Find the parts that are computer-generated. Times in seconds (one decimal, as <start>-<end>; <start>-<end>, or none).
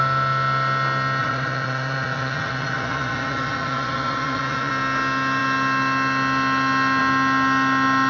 1.2-4.7